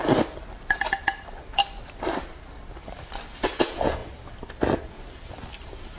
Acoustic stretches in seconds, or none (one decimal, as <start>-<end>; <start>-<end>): 0.0-3.6; 4.0-6.0